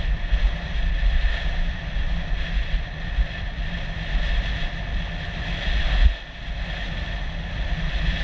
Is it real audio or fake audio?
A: real